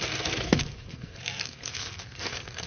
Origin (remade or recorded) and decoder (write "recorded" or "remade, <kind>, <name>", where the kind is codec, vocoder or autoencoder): remade, codec, SNAC